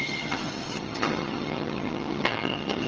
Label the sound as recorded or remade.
remade